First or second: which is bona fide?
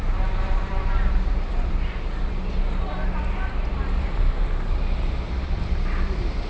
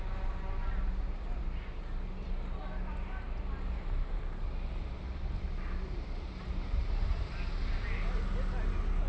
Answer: second